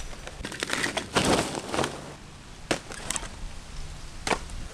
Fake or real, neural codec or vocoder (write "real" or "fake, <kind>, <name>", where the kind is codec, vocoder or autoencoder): real